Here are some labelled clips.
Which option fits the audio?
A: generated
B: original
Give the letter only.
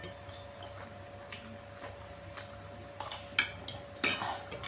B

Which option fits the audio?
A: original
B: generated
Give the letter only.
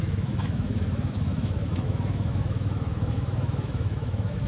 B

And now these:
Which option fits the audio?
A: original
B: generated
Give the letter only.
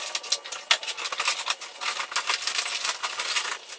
A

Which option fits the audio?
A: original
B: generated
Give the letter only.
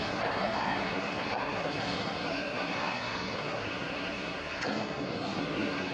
B